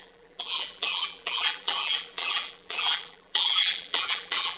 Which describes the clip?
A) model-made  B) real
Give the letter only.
A